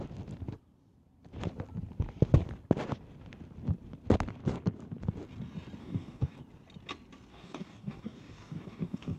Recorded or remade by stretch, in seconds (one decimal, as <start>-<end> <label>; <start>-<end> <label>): 0.0-5.8 recorded; 5.8-6.4 remade; 6.4-7.3 recorded; 7.3-9.2 remade